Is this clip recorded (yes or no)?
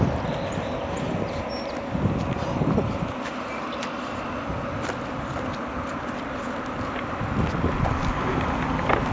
yes